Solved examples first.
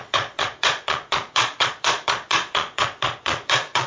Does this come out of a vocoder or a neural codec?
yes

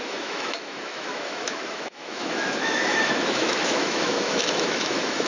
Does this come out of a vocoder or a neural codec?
yes